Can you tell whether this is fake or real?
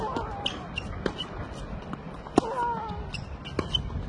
real